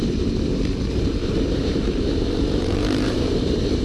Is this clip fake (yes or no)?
yes